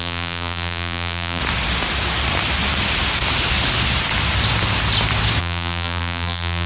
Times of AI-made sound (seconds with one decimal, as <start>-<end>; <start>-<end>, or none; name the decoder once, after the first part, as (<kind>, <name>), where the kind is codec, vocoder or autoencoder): 0.0-1.4 (vocoder, BigVGAN v2); 5.4-6.7